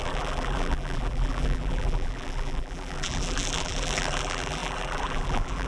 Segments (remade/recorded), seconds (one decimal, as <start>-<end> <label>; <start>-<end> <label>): 0.0-5.7 remade